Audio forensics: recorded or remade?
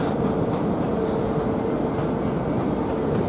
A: recorded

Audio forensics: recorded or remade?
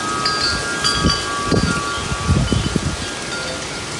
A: recorded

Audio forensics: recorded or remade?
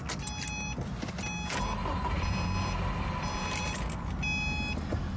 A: recorded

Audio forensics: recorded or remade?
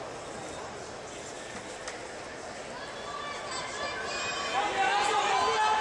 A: recorded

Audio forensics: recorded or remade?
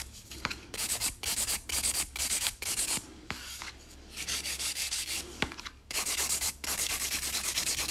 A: remade